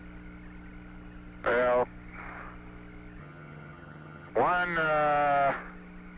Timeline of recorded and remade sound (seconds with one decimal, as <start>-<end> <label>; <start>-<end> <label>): 0.0-3.2 recorded; 3.2-4.3 remade; 4.3-6.2 recorded